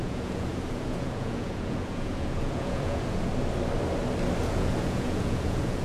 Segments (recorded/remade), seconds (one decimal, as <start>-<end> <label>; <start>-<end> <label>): 0.0-3.3 remade; 3.3-4.4 recorded; 4.4-5.8 remade